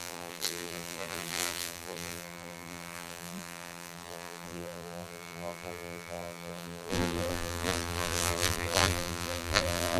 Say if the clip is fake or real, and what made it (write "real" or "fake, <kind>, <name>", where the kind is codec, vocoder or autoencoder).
fake, vocoder, BigVGAN v2